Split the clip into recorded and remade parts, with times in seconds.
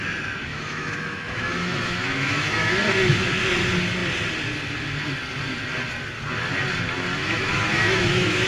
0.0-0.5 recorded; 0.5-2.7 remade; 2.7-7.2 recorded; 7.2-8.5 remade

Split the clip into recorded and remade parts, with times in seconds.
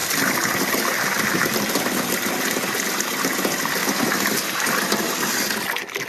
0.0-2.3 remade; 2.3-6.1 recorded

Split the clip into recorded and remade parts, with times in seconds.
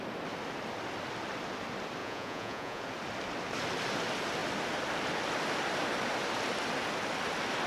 0.0-2.0 recorded; 2.0-2.8 remade; 2.8-7.7 recorded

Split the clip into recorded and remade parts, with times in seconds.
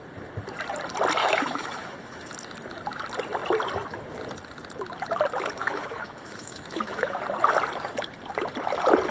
0.0-1.2 recorded; 1.2-2.3 remade; 2.3-5.6 recorded; 5.6-7.2 remade; 7.2-9.1 recorded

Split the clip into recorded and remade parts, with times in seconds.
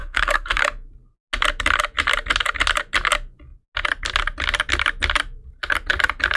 0.0-0.6 remade; 0.6-6.4 recorded